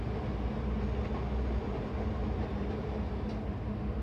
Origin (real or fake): real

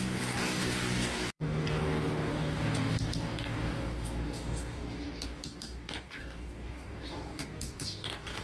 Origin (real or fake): fake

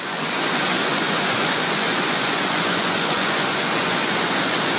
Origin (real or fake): fake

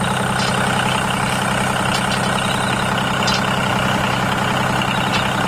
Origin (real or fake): real